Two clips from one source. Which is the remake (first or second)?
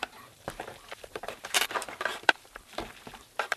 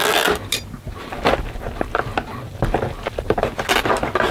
first